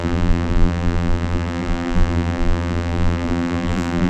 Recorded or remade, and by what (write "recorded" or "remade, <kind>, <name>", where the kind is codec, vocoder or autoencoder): remade, vocoder, BigVGAN v2